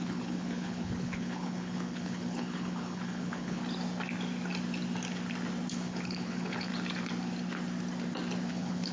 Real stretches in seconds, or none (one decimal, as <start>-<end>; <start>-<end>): 3.6-5.7; 6.7-8.5